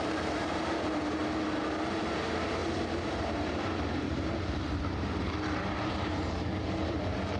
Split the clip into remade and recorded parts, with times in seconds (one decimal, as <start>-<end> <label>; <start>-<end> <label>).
0.0-1.2 remade; 1.2-1.9 recorded; 1.9-7.4 remade